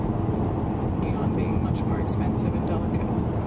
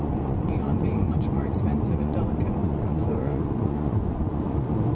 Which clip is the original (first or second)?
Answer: first